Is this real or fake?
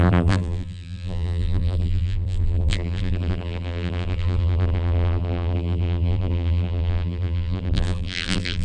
fake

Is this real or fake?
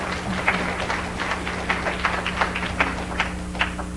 real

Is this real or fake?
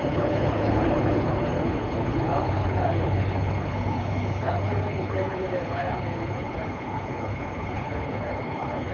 fake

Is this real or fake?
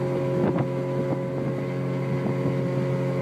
real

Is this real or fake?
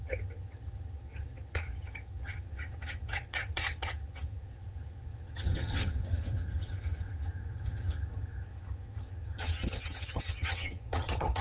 fake